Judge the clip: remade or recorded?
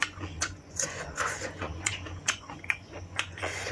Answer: remade